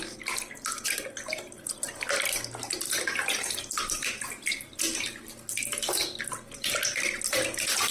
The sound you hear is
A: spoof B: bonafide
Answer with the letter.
B